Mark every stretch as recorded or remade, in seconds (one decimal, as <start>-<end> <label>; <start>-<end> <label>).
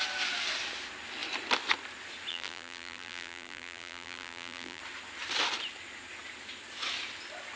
0.0-2.3 recorded; 2.3-4.8 remade; 4.8-7.6 recorded